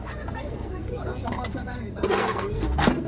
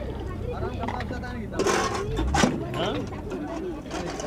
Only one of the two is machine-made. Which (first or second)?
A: first